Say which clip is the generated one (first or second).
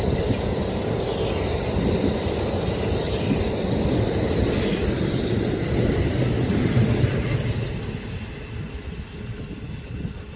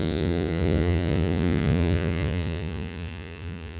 second